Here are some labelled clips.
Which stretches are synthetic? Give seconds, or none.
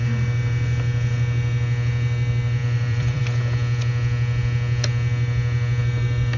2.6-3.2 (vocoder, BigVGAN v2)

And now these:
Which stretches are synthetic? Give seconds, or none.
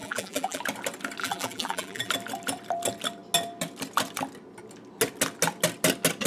0.0-0.6 (vocoder, BigVGAN v2); 1.2-2.1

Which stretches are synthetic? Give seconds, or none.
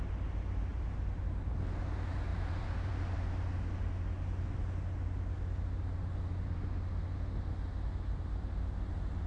0.7-1.7 (vocoder, BigVGAN v2); 2.3-2.9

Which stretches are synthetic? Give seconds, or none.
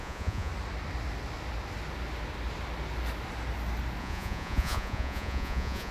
0.0-0.5 (vocoder, Vocos); 4.0-5.9